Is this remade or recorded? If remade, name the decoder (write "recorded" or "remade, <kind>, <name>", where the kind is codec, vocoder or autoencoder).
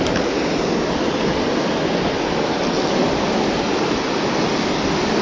recorded